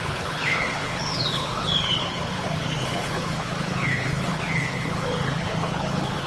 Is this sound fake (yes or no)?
yes